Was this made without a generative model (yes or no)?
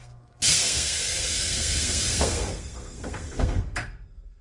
no